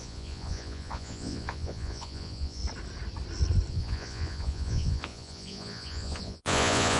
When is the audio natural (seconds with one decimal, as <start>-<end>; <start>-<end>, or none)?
2.6-3.7